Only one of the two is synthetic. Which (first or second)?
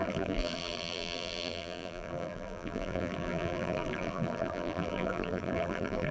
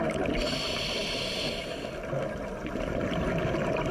first